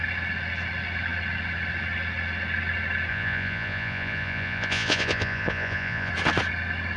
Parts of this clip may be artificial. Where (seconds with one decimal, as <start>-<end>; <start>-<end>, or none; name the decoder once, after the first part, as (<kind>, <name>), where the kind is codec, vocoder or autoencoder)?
3.1-6.1 (vocoder, Vocos)